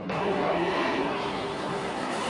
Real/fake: fake